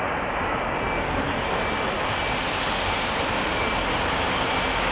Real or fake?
real